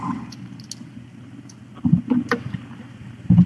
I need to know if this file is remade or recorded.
recorded